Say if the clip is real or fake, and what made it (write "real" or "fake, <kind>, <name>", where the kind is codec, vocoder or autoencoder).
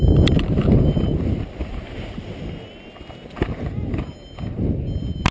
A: real